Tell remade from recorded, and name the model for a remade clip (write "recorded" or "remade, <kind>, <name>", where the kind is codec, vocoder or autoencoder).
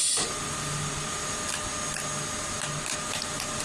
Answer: recorded